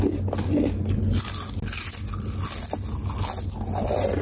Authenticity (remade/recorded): recorded